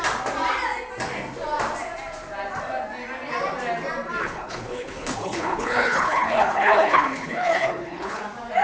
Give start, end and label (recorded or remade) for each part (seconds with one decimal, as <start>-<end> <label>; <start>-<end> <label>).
0.0-4.2 recorded; 4.2-8.2 remade; 8.2-8.6 recorded